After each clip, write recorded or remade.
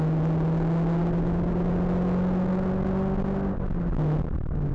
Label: recorded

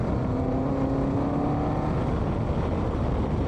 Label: recorded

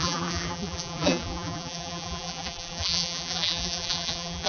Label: remade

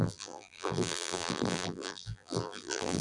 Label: remade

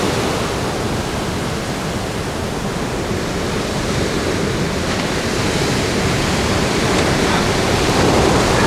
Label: recorded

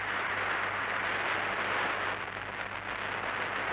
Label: recorded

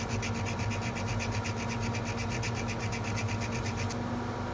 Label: recorded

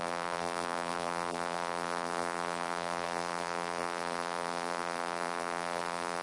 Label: remade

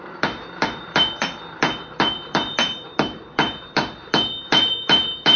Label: remade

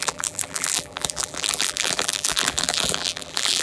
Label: remade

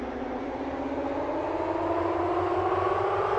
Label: recorded